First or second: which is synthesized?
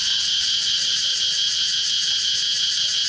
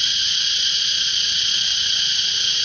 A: second